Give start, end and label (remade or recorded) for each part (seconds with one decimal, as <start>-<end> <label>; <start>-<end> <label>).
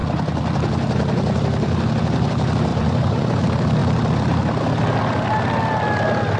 0.0-2.7 recorded; 2.7-3.4 remade; 3.4-6.4 recorded